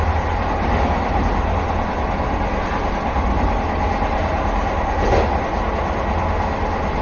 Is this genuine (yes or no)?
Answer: yes